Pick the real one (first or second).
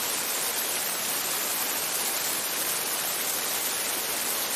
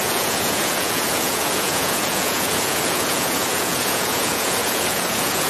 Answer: first